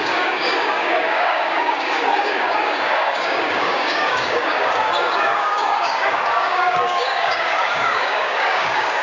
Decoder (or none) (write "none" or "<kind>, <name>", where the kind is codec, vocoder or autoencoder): codec, DAC